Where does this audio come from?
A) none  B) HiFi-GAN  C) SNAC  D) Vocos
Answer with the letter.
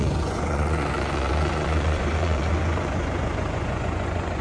D